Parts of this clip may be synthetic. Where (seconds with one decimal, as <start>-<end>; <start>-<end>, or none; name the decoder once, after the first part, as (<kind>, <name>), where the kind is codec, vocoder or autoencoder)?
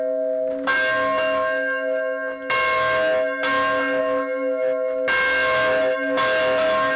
none